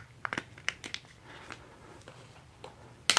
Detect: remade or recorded recorded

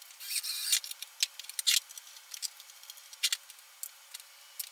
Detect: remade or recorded recorded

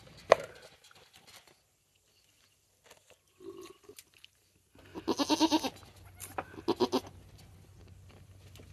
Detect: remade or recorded recorded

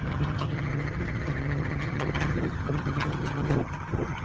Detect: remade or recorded remade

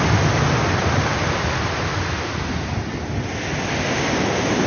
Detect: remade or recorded recorded